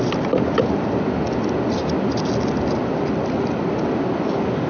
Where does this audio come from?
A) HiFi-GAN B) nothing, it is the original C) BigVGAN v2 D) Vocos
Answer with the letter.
B